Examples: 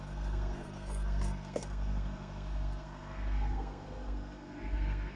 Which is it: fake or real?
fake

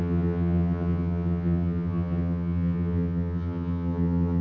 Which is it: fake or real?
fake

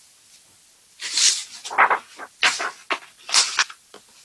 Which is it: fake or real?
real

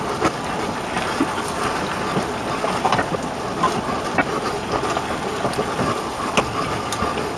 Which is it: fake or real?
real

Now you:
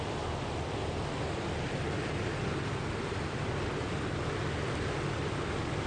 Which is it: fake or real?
real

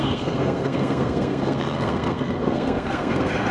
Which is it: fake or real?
fake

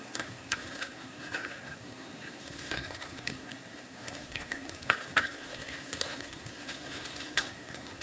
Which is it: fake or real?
fake